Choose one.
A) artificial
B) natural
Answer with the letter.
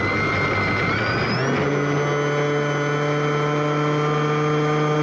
B